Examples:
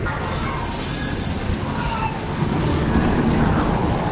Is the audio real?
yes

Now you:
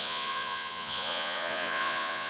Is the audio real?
no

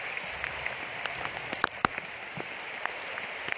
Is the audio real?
yes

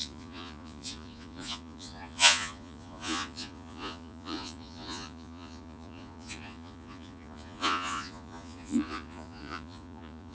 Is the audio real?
no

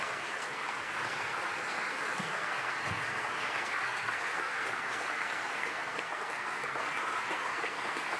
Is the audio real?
no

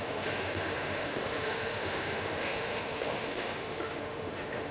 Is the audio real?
no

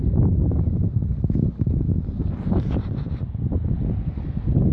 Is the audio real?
yes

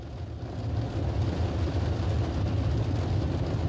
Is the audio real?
yes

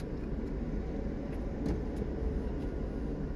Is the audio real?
yes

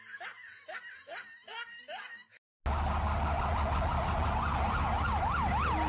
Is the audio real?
yes